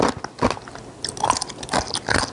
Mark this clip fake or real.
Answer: real